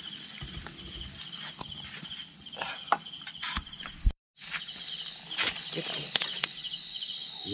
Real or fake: real